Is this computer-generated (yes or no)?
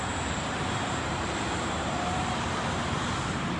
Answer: yes